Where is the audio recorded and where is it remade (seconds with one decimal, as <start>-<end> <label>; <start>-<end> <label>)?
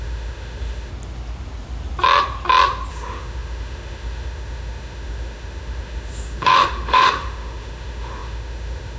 0.0-0.9 remade; 0.9-2.9 recorded; 2.9-9.0 remade